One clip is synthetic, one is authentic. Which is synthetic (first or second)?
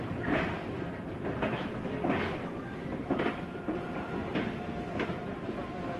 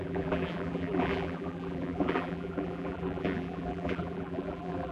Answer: second